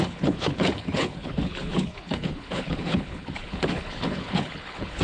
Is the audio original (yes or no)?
no